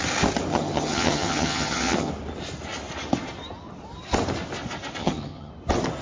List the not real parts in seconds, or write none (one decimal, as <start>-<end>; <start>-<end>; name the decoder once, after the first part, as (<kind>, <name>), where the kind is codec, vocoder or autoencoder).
0.5-2.1 (vocoder, HiFi-GAN); 5.0-5.5